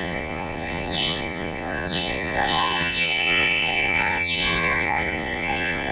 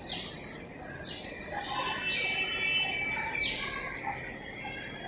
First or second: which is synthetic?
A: first